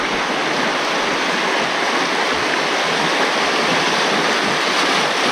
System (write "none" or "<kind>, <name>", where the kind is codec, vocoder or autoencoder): none